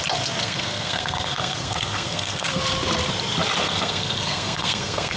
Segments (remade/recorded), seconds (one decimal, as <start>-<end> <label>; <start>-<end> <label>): 0.0-0.4 recorded; 0.4-2.6 remade; 2.6-3.6 recorded; 3.6-5.2 remade